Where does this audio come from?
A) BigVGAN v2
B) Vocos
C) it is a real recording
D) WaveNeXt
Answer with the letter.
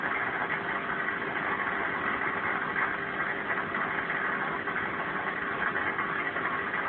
C